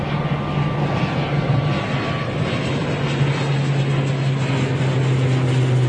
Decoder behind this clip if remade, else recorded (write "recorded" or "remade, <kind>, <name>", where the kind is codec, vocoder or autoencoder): recorded